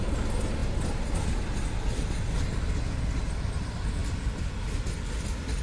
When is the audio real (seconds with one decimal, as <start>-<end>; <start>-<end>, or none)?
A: 0.0-5.6

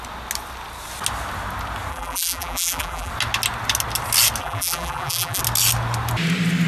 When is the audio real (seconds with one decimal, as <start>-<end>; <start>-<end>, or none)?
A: 0.0-1.9; 3.1-4.4; 5.4-6.7

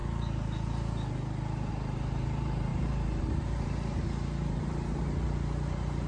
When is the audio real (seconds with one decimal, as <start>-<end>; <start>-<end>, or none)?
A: 0.0-1.7

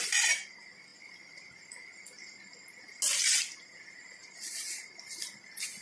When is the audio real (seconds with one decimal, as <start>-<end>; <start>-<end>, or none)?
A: 0.0-5.8